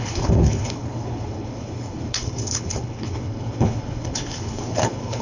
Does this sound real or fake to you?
fake